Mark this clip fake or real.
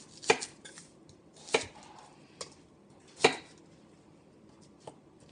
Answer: real